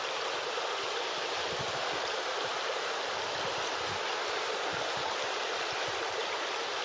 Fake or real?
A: real